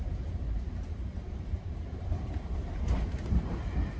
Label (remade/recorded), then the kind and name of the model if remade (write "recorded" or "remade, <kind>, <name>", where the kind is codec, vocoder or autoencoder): remade, vocoder, BigVGAN v2